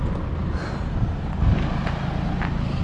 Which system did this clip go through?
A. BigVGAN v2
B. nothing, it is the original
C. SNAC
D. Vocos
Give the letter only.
B